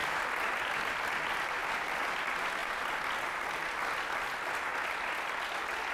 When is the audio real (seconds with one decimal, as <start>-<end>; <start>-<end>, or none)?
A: 0.0-5.9